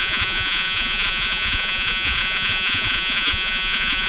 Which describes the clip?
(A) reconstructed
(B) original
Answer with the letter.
A